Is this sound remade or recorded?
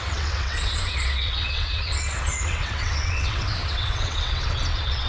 remade